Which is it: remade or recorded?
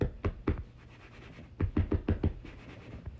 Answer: recorded